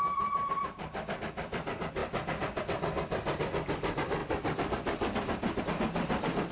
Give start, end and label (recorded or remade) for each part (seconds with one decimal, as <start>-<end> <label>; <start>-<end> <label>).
0.0-6.5 recorded